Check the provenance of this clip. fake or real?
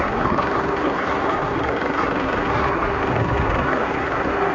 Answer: fake